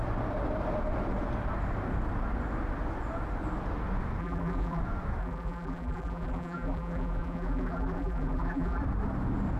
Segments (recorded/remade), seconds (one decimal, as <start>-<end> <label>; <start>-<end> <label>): 0.0-4.2 recorded; 4.2-4.8 remade; 4.8-5.2 recorded; 5.2-8.8 remade; 8.8-9.6 recorded